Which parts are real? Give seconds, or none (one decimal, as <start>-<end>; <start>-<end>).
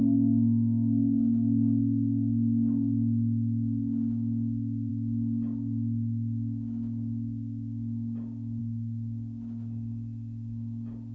0.0-11.1